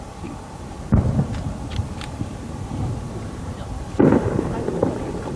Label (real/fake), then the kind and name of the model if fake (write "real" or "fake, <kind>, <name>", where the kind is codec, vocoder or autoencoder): fake, vocoder, BigVGAN v2